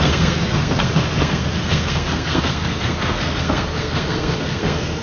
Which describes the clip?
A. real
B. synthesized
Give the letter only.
B